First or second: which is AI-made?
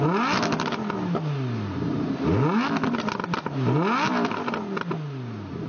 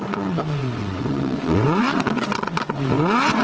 second